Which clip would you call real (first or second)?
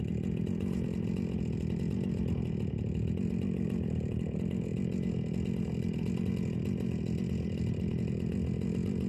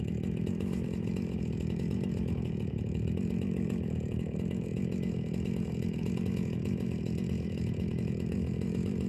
first